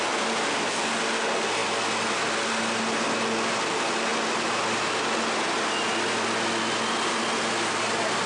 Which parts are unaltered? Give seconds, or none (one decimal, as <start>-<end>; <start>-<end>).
0.0-8.3